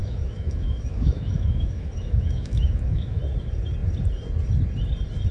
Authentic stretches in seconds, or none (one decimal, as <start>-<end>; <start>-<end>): 3.2-5.3

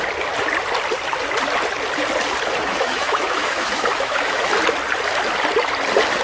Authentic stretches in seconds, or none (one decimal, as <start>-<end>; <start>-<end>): 0.0-2.6; 4.4-6.2

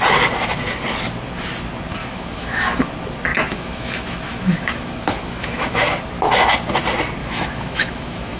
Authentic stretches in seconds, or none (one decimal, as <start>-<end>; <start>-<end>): 0.0-2.0; 2.9-3.3; 5.9-7.2

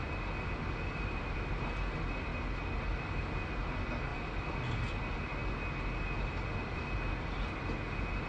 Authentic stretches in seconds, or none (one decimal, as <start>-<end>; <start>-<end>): 0.0-8.3

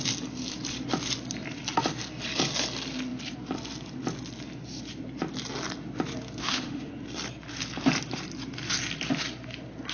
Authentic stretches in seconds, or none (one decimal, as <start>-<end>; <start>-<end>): 0.0-6.4; 6.9-9.9